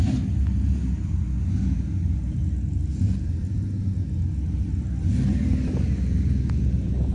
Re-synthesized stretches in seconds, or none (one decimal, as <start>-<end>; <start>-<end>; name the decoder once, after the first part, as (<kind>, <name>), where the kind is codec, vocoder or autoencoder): none